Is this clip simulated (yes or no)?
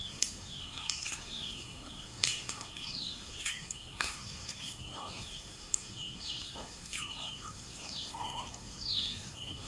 yes